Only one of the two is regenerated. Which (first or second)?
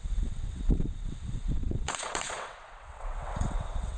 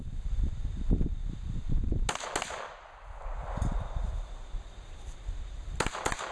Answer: first